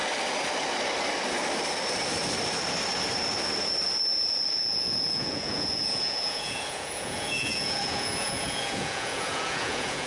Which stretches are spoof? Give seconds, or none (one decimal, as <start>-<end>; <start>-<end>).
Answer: 4.5-10.1